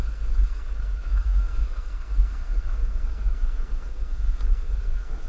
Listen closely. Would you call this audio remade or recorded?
remade